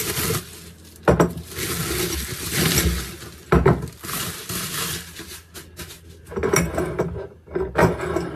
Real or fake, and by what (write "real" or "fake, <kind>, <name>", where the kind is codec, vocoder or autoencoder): real